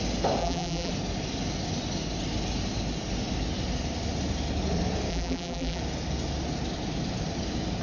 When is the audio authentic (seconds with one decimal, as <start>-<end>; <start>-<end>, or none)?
0.0-0.4; 0.9-5.1; 5.8-7.8